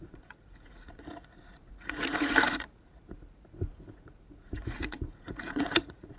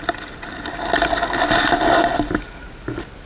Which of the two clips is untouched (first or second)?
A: second